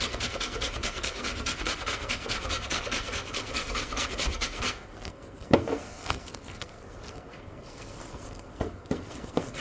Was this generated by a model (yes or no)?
yes